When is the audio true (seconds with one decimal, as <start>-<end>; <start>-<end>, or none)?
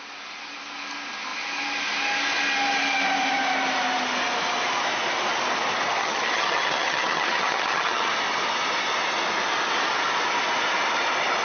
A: 0.0-6.0; 8.1-11.4